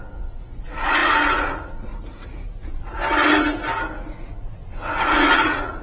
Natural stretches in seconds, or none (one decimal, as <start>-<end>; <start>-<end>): 1.9-4.1